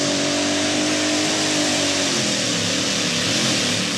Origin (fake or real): real